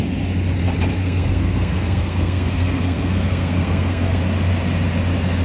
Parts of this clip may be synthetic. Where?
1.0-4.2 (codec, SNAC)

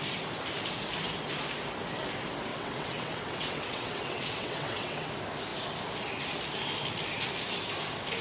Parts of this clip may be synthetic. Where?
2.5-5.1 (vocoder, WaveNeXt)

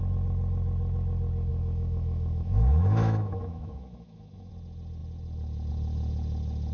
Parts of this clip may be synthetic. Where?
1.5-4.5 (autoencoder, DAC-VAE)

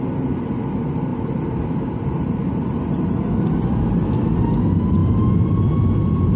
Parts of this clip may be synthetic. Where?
none

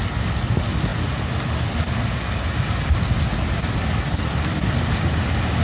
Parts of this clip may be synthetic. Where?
none